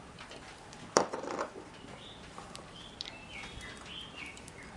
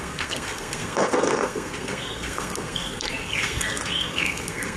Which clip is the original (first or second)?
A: first